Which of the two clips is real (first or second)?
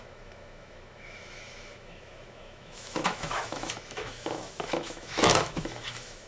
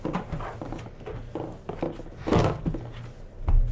second